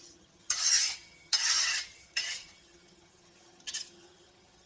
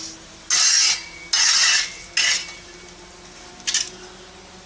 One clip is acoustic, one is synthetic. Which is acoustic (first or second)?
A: second